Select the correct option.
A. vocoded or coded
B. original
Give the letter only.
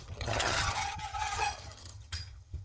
A